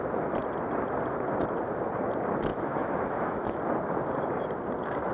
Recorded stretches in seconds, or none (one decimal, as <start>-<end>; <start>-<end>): 0.0-2.5; 3.6-5.1